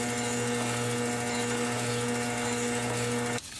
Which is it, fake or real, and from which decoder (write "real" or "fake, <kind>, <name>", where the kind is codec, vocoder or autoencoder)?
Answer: real